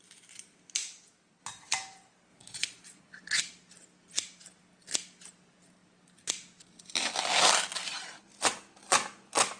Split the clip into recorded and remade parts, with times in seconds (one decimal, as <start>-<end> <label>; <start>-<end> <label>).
0.0-2.3 recorded; 2.3-3.4 remade; 3.4-9.6 recorded